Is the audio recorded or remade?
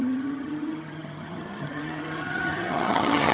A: remade